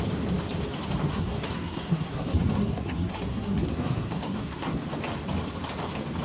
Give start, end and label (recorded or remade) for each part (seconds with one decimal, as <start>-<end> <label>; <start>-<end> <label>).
0.0-1.1 recorded; 1.1-4.8 remade; 4.8-6.2 recorded